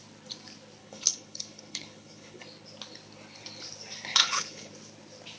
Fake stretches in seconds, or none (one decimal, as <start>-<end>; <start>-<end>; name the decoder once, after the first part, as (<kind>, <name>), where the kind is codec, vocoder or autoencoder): 0.8-2.4 (codec, HILCodec); 4.1-4.7